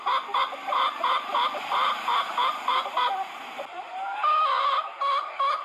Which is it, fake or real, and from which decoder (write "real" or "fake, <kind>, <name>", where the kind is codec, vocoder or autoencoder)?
real